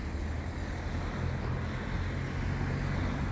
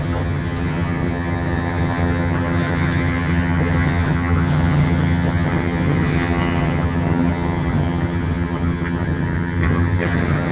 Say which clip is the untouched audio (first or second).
first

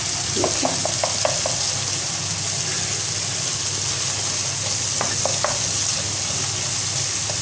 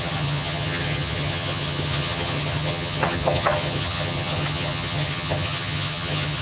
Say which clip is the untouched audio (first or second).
first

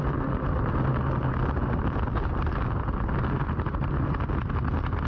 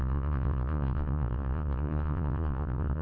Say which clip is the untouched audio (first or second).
first